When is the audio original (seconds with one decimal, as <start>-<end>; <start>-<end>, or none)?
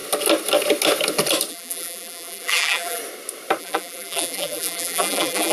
0.0-1.5; 3.0-3.6